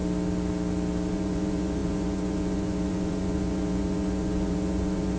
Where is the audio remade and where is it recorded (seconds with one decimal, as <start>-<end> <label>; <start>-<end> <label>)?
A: 0.0-1.1 recorded; 1.1-5.2 remade